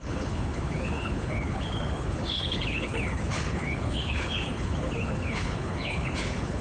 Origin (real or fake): fake